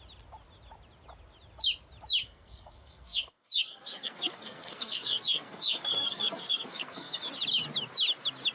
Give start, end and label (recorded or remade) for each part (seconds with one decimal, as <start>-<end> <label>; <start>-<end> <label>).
0.0-2.2 recorded; 2.2-7.2 remade; 7.2-8.5 recorded

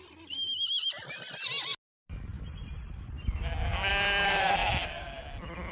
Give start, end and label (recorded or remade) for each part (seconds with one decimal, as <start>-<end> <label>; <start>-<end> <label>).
0.0-5.7 recorded

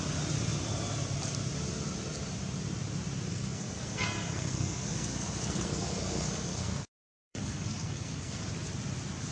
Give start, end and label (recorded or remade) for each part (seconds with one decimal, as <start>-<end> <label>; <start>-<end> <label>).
0.0-3.3 recorded; 3.3-8.4 remade; 8.4-9.3 recorded

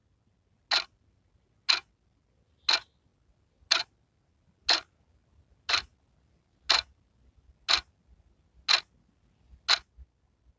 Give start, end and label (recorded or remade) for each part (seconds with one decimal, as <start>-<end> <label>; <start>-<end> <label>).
0.0-10.6 recorded

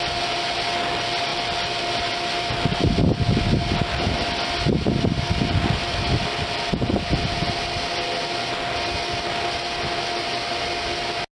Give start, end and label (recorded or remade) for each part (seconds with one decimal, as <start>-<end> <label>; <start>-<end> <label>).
0.0-11.4 recorded

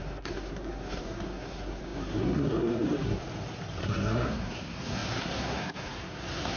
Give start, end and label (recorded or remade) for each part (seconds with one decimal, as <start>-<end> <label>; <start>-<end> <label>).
0.0-3.2 remade; 3.2-3.8 recorded; 3.8-6.6 remade

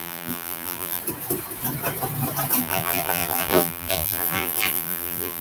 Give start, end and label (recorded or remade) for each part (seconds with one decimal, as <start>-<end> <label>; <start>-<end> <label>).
0.0-1.0 remade; 1.0-2.6 recorded; 2.6-5.4 remade